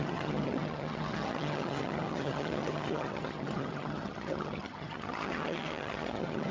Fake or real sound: fake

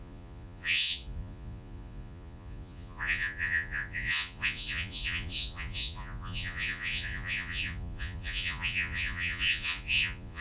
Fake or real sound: fake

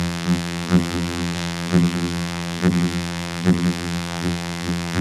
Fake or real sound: fake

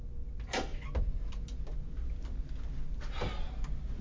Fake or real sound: real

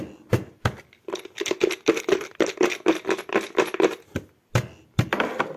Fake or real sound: real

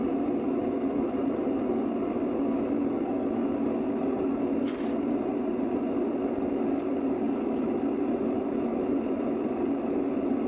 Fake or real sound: real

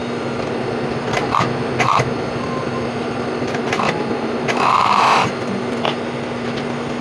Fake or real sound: real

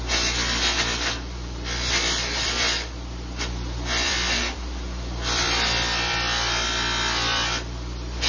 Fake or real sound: fake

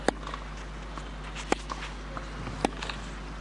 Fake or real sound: real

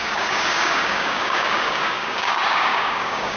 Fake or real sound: fake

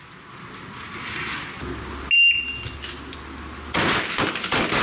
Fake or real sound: real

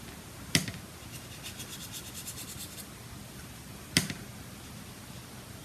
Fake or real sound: real